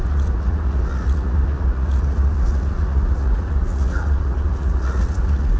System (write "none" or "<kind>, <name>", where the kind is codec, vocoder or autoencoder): vocoder, Vocos